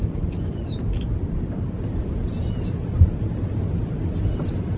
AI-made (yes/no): yes